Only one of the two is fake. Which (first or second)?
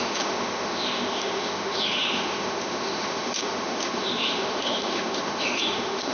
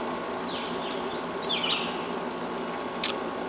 first